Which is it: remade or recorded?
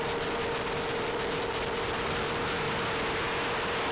recorded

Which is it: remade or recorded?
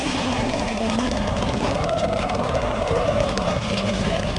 remade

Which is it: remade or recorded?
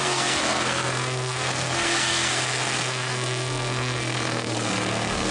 remade